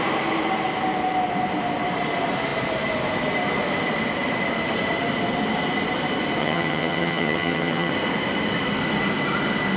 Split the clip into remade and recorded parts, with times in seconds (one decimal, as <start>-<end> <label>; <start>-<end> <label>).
0.0-6.4 recorded; 6.4-7.9 remade; 7.9-9.8 recorded